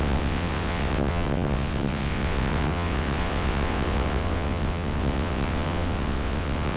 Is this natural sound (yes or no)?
no